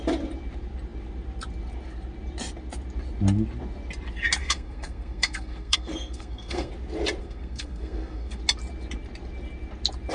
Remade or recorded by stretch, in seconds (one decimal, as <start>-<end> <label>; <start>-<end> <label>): 0.0-4.4 recorded; 4.4-6.7 remade; 6.7-7.2 recorded; 7.2-8.4 remade; 8.4-10.1 recorded